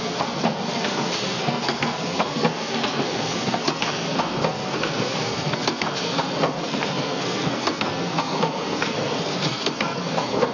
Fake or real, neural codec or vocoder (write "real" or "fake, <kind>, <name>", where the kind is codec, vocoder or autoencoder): fake, codec, SNAC